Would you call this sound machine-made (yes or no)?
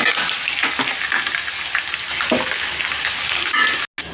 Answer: no